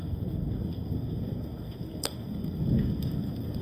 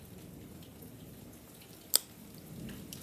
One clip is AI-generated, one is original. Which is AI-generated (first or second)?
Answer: first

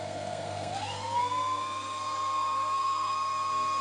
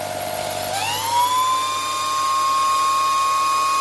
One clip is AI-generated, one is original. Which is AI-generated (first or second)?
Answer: first